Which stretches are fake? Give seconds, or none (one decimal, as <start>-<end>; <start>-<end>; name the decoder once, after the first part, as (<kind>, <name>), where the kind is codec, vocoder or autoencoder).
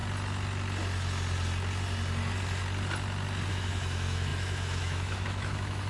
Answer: 3.5-5.9 (autoencoder, DAC-VAE)